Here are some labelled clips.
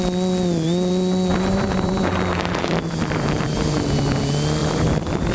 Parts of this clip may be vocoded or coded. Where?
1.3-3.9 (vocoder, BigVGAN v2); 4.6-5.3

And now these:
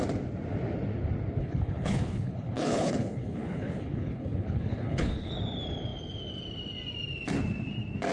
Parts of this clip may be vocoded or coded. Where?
1.4-5.3 (codec, HILCodec)

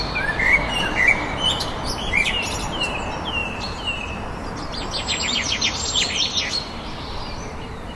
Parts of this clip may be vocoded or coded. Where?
0.0-8.0 (vocoder, BigVGAN v2)

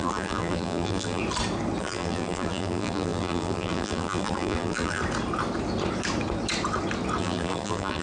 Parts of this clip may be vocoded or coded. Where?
0.0-1.2 (vocoder, BigVGAN v2); 1.8-5.0; 7.2-8.0

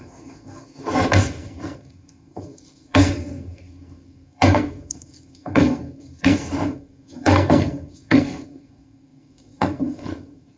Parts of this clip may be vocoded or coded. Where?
0.0-10.6 (codec, SNAC)

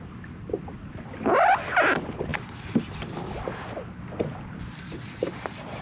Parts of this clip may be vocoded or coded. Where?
none

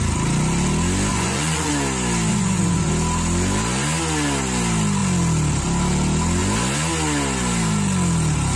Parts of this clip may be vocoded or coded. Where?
1.1-1.7 (vocoder, Vocos); 2.3-2.9